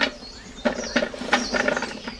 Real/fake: real